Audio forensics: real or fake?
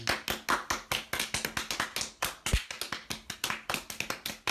real